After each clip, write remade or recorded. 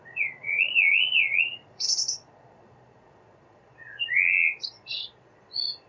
remade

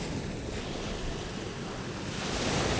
recorded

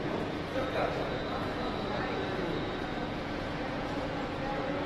remade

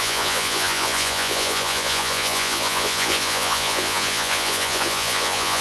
remade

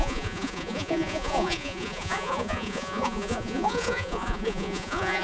remade